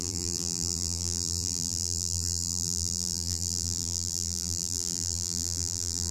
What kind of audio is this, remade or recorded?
remade